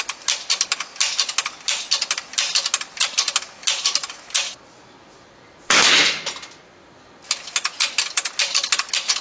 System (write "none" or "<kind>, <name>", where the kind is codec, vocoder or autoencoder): none